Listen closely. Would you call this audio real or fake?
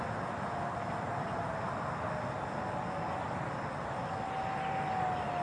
real